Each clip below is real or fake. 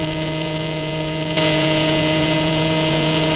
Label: fake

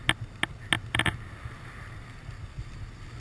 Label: real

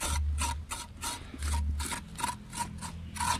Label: real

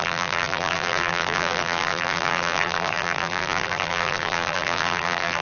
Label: fake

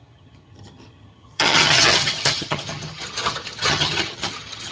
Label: fake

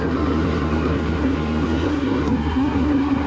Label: fake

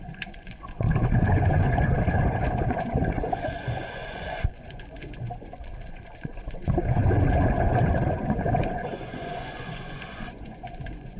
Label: fake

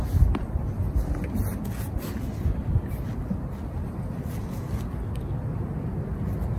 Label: real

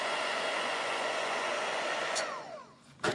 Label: fake